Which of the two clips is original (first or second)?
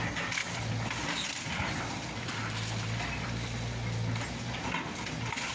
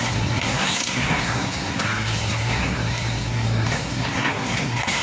first